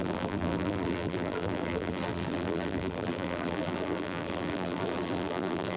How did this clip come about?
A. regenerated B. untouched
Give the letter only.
A